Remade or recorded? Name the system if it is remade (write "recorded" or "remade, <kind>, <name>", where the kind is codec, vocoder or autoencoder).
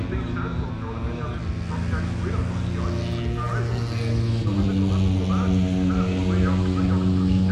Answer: recorded